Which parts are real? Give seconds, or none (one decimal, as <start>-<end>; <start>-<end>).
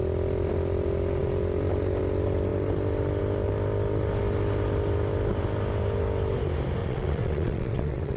0.0-6.8